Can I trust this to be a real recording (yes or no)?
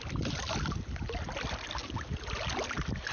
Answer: yes